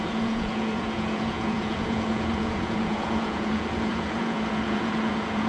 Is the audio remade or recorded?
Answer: remade